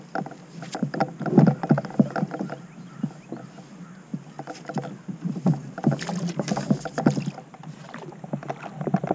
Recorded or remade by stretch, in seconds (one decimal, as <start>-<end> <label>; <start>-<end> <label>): 0.0-9.1 recorded